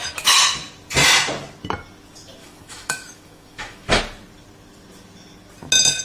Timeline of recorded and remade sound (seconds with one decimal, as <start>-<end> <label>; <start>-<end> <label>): 0.0-2.4 recorded; 2.4-4.0 remade; 4.0-6.0 recorded